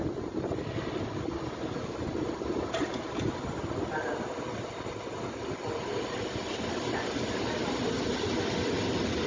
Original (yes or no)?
yes